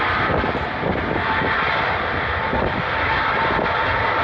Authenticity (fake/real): real